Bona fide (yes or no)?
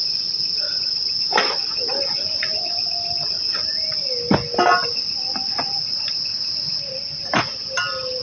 yes